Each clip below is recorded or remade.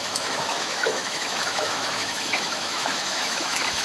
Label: remade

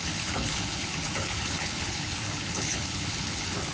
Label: remade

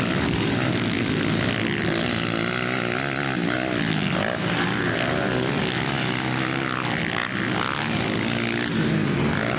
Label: recorded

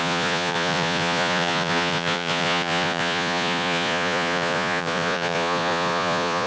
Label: remade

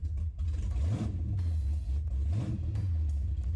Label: recorded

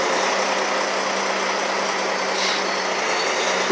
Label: recorded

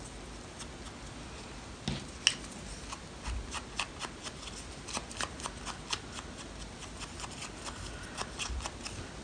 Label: recorded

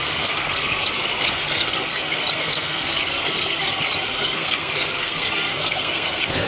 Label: remade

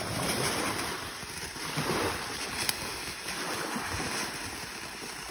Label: recorded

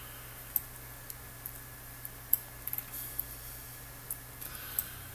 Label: recorded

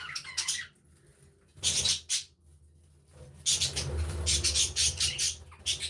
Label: recorded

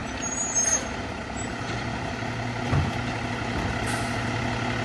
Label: recorded